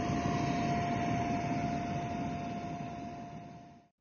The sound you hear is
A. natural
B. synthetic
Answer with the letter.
A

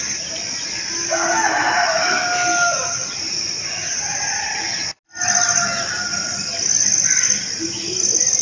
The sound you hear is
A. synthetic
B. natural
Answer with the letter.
B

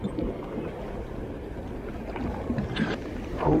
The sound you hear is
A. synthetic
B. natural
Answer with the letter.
B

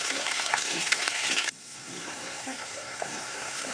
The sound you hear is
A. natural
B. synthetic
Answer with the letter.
B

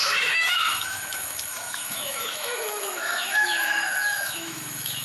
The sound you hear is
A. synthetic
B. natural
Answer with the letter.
A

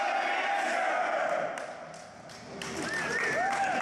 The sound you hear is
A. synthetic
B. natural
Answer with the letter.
B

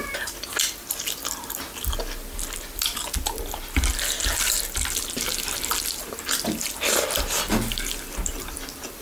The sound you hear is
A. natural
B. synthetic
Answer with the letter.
A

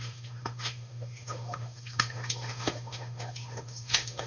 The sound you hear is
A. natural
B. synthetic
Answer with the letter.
B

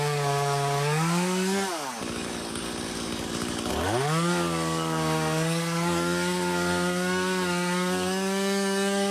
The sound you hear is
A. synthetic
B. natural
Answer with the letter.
A